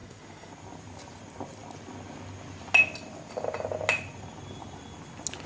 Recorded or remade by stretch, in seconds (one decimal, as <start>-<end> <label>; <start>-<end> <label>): 0.0-0.5 remade; 0.5-5.5 recorded